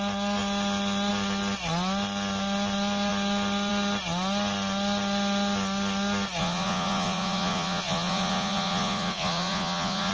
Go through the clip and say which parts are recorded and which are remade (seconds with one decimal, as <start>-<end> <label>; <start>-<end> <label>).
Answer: 0.0-6.4 recorded; 6.4-10.1 remade